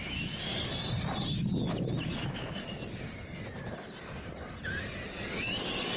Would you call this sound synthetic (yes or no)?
no